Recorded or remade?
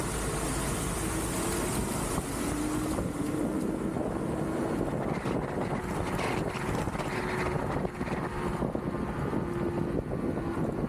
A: recorded